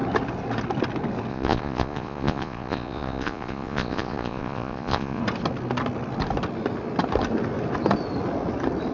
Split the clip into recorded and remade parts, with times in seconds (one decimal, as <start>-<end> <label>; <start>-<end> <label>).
0.0-1.3 recorded; 1.3-5.2 remade; 5.2-8.9 recorded